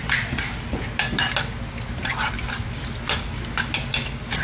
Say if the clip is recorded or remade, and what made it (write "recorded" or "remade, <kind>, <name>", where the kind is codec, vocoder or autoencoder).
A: recorded